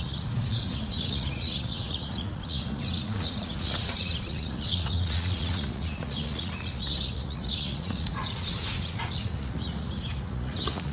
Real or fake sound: fake